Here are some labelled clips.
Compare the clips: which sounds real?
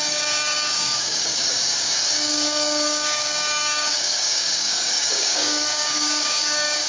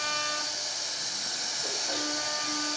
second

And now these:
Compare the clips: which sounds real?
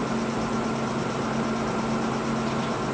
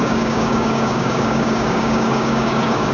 first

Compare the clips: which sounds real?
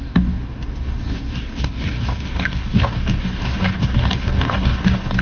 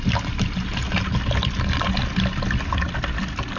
second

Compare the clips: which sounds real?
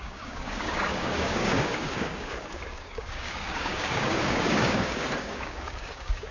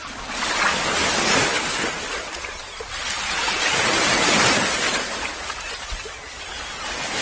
second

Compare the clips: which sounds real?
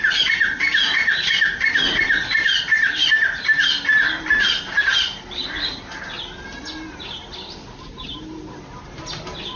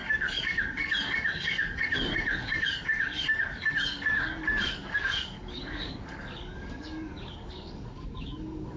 first